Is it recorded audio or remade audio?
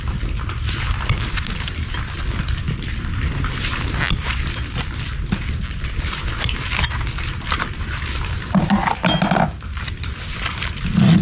recorded